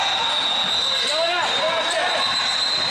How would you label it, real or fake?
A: real